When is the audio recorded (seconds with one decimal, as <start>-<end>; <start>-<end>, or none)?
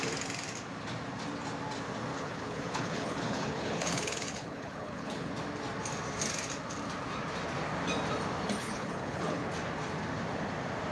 0.0-2.1; 5.3-8.6; 9.5-10.9